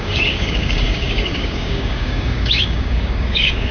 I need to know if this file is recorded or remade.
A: remade